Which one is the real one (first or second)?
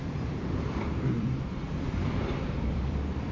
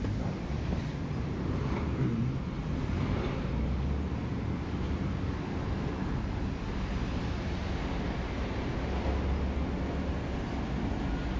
second